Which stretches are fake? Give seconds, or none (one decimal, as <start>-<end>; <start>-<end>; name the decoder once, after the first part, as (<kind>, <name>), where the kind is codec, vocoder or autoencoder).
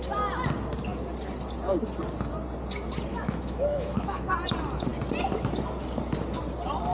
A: 3.1-4.3 (autoencoder, DAC-VAE)